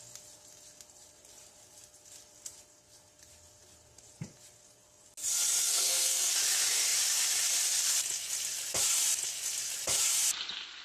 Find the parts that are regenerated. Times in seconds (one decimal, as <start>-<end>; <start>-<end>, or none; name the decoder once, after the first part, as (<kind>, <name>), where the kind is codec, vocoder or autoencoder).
5.6-6.3 (codec, SNAC)

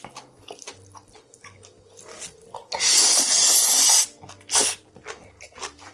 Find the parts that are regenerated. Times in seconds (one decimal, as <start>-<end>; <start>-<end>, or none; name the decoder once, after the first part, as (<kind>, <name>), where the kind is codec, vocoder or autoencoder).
none